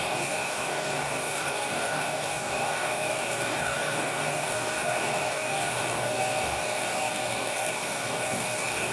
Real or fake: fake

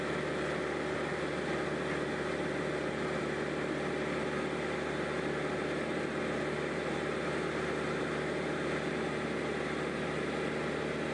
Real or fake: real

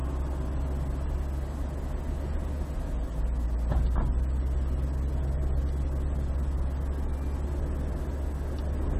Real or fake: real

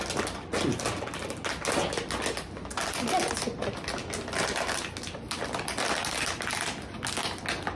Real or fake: real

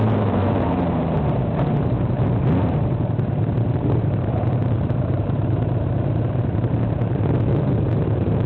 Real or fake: fake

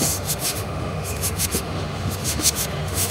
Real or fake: fake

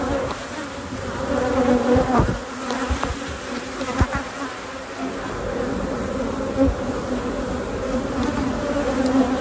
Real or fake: real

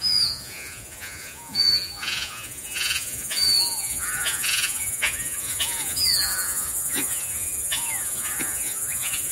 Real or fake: fake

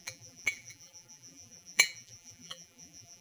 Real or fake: fake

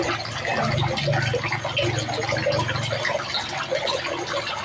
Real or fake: real